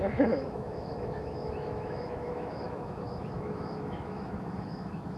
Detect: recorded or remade remade